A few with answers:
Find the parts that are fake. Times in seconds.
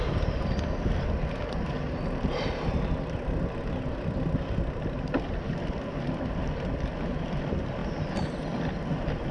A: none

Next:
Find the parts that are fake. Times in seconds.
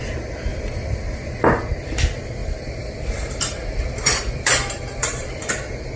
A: 0.5-1.6; 2.4-5.5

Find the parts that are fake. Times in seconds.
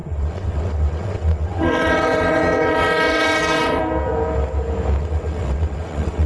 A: 0.0-3.8; 5.0-6.3